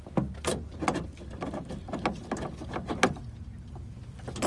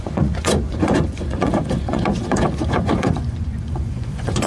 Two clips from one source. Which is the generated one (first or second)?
second